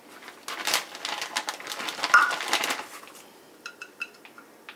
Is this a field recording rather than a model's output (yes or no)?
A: yes